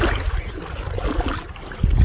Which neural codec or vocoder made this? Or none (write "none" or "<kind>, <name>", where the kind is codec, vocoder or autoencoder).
none